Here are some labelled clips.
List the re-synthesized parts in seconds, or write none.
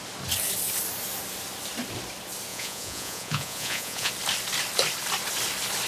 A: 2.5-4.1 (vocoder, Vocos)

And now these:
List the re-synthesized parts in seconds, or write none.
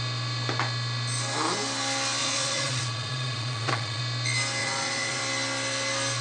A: 2.2-4.0 (vocoder, Vocos); 4.6-5.2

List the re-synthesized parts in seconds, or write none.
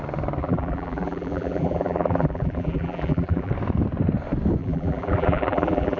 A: 0.4-3.5 (vocoder, BigVGAN v2); 4.6-6.0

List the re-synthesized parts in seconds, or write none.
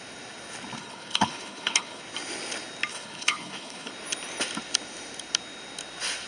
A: 0.8-2.0 (codec, HILCodec); 2.9-3.9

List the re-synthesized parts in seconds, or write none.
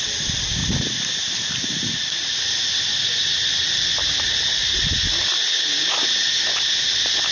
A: none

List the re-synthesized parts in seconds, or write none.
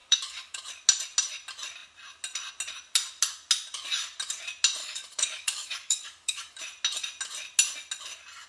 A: 0.0-0.7 (codec, DAC); 4.8-6.6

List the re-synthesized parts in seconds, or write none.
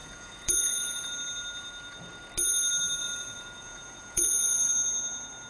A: 0.0-1.1 (vocoder, Vocos); 3.0-4.7